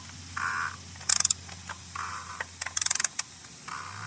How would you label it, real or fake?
real